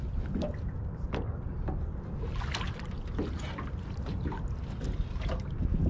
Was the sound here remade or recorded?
recorded